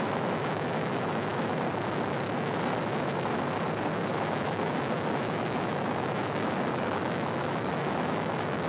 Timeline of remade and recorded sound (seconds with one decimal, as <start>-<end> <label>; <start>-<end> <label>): 0.0-1.3 remade; 1.3-4.3 recorded; 4.3-8.7 remade